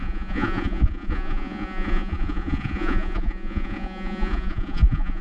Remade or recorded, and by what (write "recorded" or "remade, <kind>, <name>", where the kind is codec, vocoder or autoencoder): remade, vocoder, Vocos